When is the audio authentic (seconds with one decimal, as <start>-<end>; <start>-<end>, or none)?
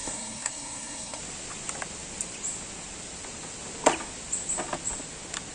1.2-5.5